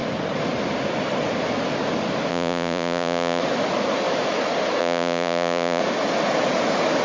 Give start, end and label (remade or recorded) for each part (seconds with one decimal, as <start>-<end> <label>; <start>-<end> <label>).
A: 0.0-2.3 recorded; 2.3-3.4 remade; 3.4-4.8 recorded; 4.8-5.8 remade; 5.8-7.0 recorded